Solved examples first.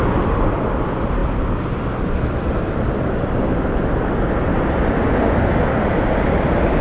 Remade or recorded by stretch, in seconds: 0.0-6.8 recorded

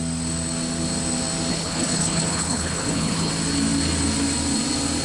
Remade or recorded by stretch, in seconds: 0.0-1.5 recorded; 1.5-3.3 remade; 3.3-5.0 recorded

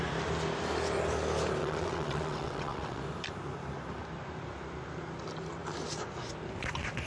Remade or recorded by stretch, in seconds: 0.0-1.6 recorded; 1.6-3.0 remade; 3.0-7.1 recorded

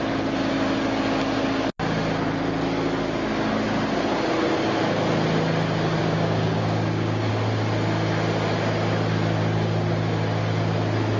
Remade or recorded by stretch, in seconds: 0.0-6.0 recorded; 6.0-7.3 remade; 7.3-11.2 recorded